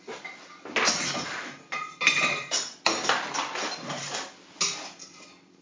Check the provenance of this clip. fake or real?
real